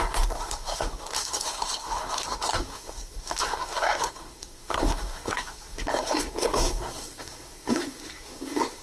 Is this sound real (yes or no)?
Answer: no